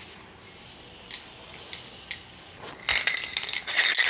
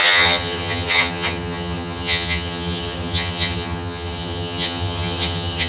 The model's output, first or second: second